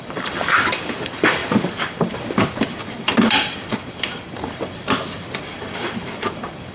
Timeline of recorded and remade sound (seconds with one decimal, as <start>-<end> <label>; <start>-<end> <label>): 0.0-6.7 remade